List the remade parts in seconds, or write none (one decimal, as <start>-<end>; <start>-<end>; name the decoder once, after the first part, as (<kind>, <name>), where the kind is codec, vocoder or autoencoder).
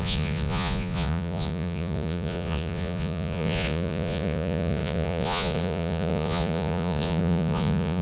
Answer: 0.0-8.0 (vocoder, Vocos)